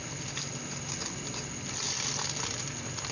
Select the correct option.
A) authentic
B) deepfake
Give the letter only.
A